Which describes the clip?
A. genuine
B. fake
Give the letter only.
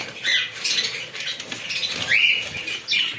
A